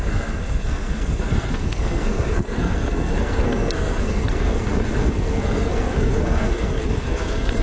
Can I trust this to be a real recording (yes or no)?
no